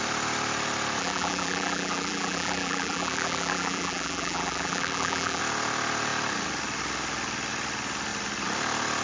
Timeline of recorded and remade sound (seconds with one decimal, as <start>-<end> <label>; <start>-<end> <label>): 0.0-1.0 recorded; 1.0-5.4 remade; 5.4-9.0 recorded